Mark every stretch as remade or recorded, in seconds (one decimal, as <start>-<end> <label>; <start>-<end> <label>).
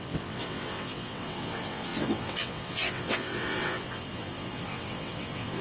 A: 0.0-5.6 remade